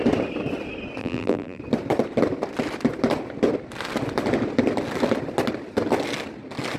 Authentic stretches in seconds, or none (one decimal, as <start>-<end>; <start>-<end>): 0.0-1.0; 1.6-6.8